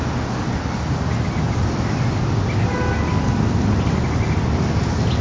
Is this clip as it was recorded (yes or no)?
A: yes